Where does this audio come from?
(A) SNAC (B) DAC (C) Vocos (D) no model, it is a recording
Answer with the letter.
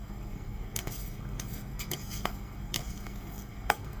A